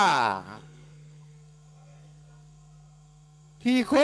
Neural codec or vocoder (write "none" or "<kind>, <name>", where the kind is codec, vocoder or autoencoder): codec, SNAC